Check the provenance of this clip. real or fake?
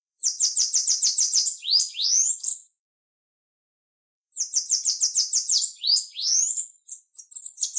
fake